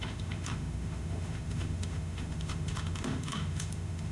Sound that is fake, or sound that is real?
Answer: fake